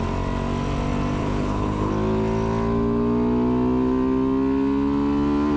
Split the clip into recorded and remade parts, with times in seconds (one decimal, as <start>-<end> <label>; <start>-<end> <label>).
0.0-1.2 recorded; 1.2-1.9 remade; 1.9-5.6 recorded